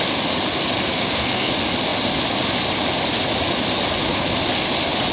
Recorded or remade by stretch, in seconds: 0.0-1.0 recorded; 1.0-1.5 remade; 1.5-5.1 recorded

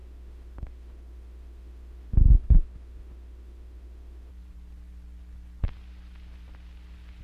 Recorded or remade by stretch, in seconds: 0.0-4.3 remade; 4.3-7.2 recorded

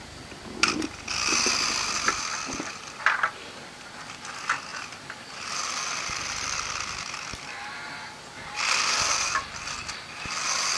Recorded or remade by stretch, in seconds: 0.0-4.7 recorded; 4.7-5.4 remade; 5.4-10.8 recorded

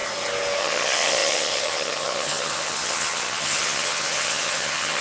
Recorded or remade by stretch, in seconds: 0.0-0.6 recorded; 0.6-5.0 remade

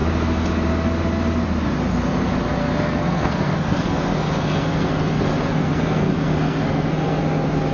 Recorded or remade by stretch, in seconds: 0.0-2.6 recorded; 2.6-7.2 remade; 7.2-7.7 recorded

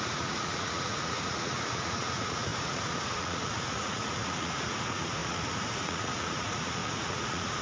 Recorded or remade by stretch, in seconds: 0.0-7.6 remade

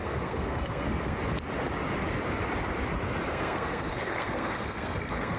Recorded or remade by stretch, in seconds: 0.0-1.2 remade; 1.2-3.3 recorded; 3.3-5.4 remade